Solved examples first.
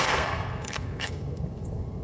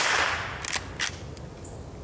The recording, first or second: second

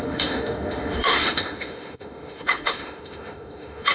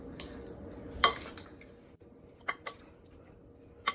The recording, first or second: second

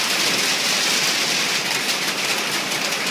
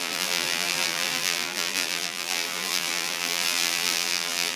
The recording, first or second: first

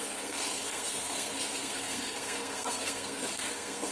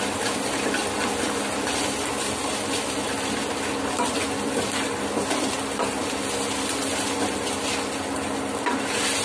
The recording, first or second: second